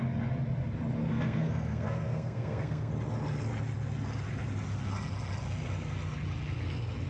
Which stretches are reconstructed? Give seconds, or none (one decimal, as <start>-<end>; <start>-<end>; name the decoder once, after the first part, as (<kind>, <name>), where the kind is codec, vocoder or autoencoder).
1.0-2.9 (codec, SNAC)